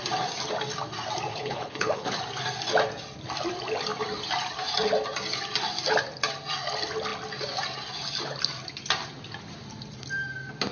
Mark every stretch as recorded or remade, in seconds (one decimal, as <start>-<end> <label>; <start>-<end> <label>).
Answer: 0.0-1.3 recorded; 1.3-2.2 remade; 2.2-10.7 recorded